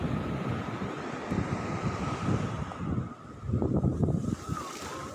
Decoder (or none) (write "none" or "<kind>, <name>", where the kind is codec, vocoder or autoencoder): none